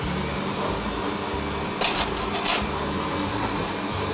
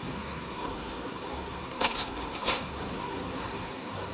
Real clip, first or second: first